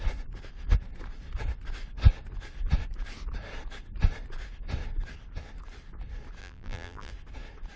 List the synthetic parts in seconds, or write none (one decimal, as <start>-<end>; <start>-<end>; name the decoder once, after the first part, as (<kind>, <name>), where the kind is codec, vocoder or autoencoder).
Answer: 6.4-7.1 (vocoder, BigVGAN v2)